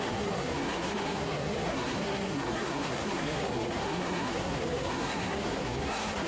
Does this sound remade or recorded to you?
remade